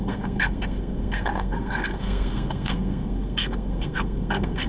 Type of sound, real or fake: fake